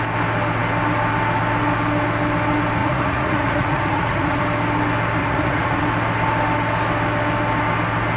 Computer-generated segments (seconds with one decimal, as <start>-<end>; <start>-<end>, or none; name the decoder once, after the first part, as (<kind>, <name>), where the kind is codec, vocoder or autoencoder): 2.8-4.4 (vocoder, Vocos); 5.2-5.8